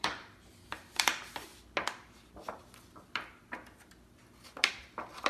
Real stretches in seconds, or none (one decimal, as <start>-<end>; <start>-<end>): 1.5-4.7